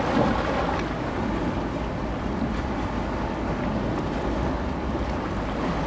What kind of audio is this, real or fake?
real